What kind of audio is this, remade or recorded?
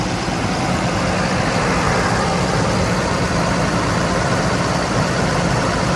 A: remade